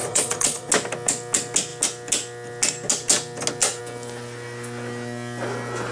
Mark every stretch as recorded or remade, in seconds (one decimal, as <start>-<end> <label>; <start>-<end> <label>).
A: 0.0-0.7 remade; 0.7-5.9 recorded